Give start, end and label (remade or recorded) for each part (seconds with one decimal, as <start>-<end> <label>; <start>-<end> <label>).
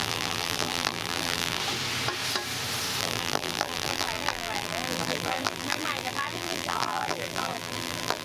0.0-1.6 remade; 1.6-3.0 recorded; 3.0-8.2 remade